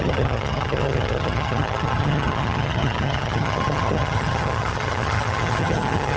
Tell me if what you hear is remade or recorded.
remade